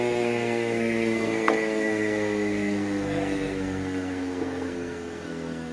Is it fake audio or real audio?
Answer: fake